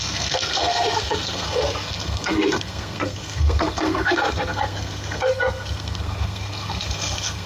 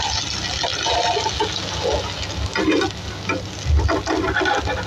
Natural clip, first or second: second